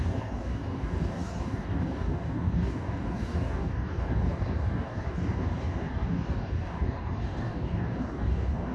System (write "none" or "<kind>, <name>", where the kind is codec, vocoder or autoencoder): codec, DAC